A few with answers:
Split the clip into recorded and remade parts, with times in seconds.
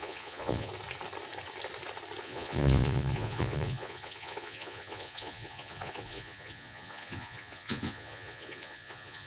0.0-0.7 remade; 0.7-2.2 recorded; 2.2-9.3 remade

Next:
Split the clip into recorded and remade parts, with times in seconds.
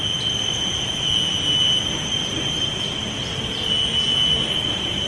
0.0-5.1 recorded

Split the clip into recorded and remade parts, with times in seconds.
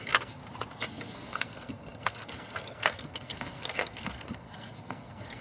0.0-0.4 remade; 0.4-0.9 recorded; 0.9-5.4 remade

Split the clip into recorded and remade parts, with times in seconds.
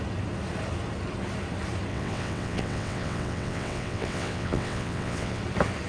0.0-1.9 recorded; 1.9-5.4 remade; 5.4-5.9 recorded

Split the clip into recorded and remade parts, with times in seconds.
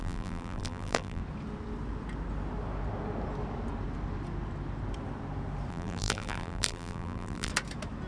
0.0-1.2 remade; 1.2-5.7 recorded; 5.7-7.5 remade; 7.5-8.1 recorded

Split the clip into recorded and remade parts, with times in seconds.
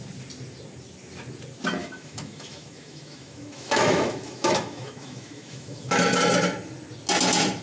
0.0-1.8 recorded; 1.8-6.2 remade; 6.2-7.6 recorded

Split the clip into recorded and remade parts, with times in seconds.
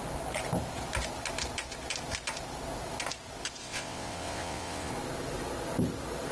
0.0-3.6 recorded; 3.6-4.9 remade; 4.9-6.3 recorded